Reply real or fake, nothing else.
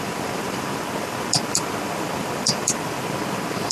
fake